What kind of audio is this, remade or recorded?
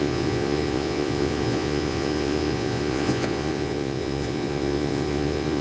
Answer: remade